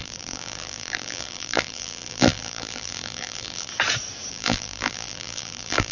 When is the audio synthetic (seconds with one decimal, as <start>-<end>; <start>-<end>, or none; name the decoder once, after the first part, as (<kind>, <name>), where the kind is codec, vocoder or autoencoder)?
0.0-3.7 (vocoder, BigVGAN v2); 4.3-5.9